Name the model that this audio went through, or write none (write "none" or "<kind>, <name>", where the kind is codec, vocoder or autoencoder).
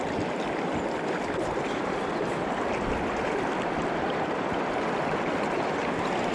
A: none